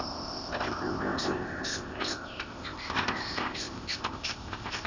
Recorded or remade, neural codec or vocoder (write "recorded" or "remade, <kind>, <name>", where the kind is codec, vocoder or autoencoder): remade, codec, ZipCodec